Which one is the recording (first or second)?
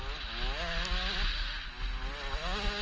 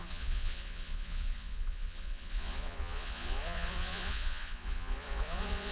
first